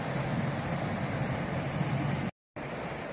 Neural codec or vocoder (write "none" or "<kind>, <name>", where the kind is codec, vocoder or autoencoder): none